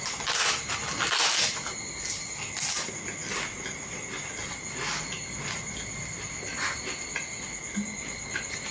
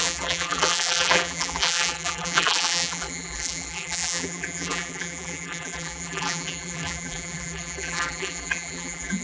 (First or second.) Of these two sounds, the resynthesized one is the second